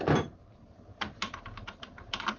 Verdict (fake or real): real